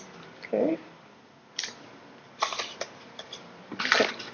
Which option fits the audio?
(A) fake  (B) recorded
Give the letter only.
B